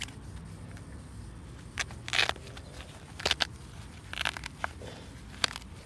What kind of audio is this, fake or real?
real